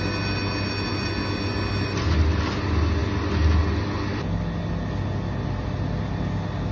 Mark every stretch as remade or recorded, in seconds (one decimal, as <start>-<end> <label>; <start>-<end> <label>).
0.0-6.7 recorded